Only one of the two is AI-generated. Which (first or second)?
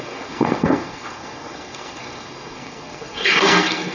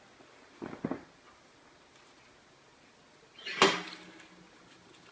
first